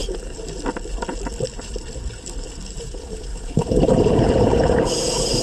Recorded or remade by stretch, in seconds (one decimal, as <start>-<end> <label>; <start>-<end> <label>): 0.0-2.8 recorded; 2.8-5.4 remade